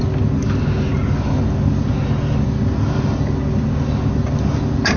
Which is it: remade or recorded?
recorded